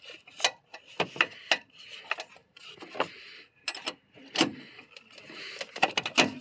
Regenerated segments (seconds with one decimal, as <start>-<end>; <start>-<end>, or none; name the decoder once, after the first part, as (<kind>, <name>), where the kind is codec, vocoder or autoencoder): none